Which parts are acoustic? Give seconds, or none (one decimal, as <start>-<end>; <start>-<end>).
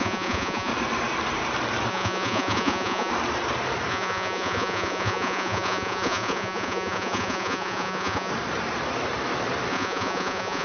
0.7-1.9; 3.1-3.9; 8.3-9.7